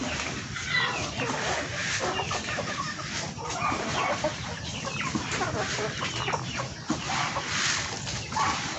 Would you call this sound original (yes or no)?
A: yes